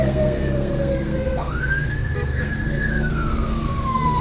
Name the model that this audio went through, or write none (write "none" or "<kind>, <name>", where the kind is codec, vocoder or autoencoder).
codec, SNAC